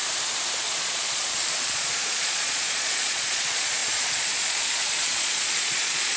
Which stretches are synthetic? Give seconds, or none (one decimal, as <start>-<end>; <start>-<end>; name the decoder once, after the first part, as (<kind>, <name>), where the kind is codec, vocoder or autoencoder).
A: 0.6-6.2 (vocoder, Vocos)